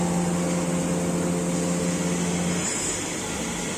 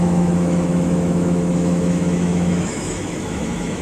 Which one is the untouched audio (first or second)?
first